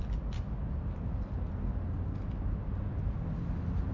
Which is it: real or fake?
real